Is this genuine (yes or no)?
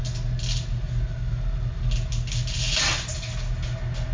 yes